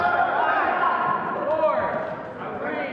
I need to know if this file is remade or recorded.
recorded